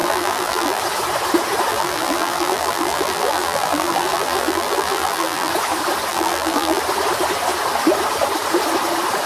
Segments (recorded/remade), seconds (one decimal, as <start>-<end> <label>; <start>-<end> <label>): 0.0-0.8 remade; 0.8-1.7 recorded; 1.7-5.5 remade; 5.5-6.1 recorded; 6.1-6.8 remade; 6.8-9.3 recorded